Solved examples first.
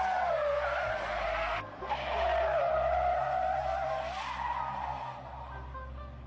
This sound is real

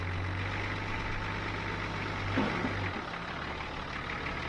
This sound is real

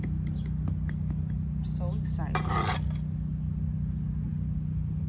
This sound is real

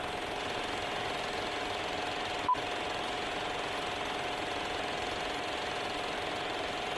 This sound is real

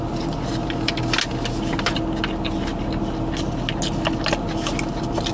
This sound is real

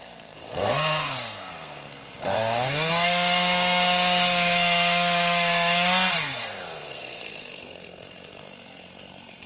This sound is fake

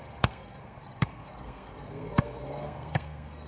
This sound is fake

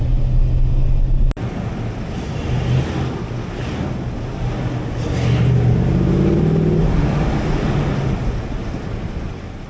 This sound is real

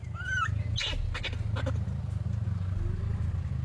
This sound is real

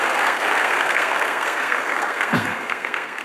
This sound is fake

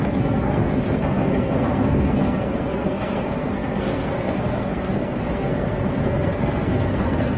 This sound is fake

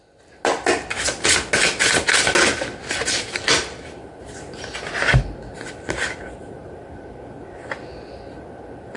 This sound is real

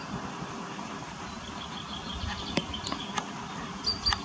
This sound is real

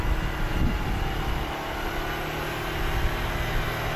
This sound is real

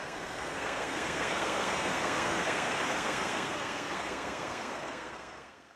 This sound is fake